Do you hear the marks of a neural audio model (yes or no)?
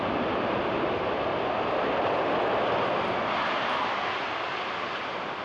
no